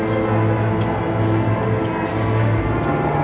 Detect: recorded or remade recorded